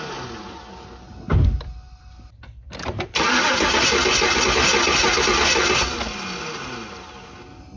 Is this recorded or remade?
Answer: recorded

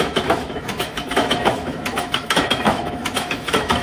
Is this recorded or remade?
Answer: remade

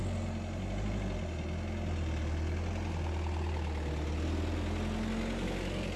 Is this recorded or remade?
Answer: recorded